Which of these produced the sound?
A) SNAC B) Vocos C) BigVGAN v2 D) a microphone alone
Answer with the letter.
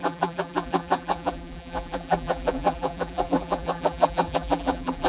C